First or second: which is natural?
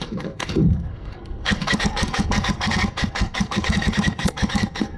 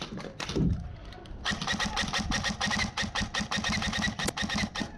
second